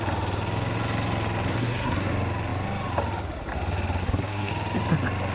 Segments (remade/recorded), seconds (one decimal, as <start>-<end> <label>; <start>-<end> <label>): 0.0-1.5 recorded; 1.5-2.1 remade; 2.1-4.0 recorded; 4.0-4.5 remade; 4.5-5.3 recorded